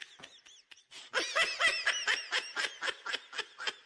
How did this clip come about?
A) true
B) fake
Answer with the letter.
A